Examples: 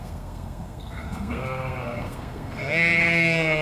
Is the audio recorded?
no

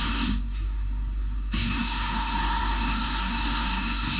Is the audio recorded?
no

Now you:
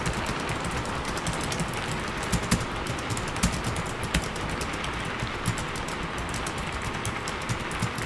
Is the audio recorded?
yes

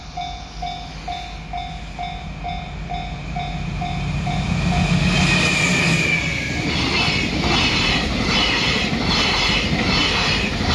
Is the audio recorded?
yes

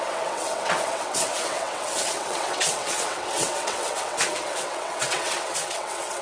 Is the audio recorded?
no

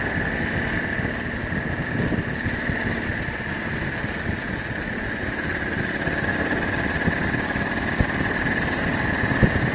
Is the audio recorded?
yes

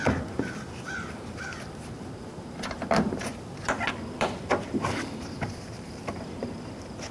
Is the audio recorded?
no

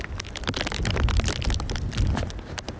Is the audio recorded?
no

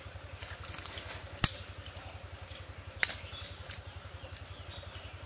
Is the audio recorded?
yes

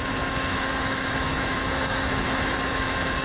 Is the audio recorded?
no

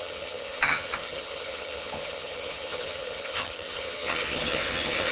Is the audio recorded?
no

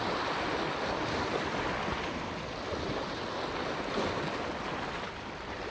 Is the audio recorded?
yes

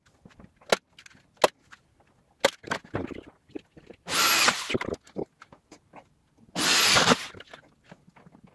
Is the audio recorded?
yes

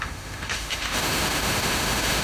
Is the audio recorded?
no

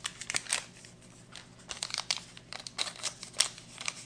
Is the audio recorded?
yes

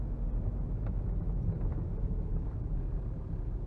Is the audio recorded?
yes